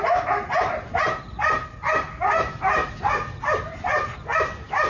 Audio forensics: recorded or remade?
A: recorded